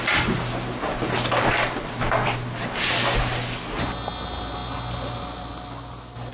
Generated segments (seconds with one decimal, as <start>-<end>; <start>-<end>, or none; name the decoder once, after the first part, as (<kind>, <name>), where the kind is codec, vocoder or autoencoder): none